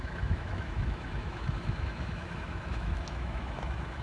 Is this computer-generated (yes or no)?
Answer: yes